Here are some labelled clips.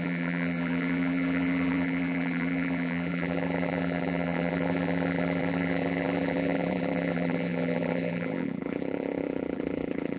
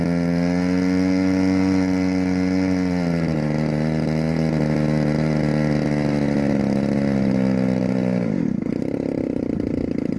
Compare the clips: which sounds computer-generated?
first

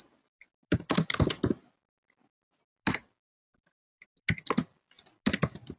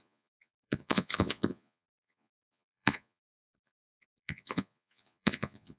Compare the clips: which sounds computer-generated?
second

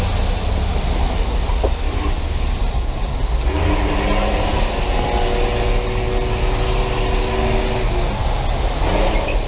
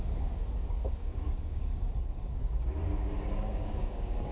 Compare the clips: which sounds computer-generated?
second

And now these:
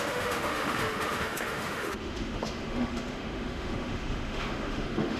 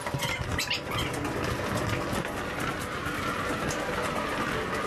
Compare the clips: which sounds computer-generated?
first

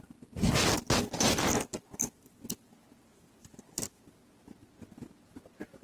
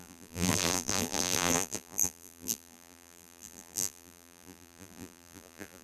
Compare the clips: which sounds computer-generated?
second